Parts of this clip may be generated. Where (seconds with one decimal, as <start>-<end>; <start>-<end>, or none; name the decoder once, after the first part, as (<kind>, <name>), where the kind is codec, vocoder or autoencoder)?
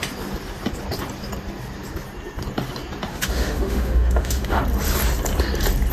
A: 3.1-4.6 (autoencoder, DAC-VAE)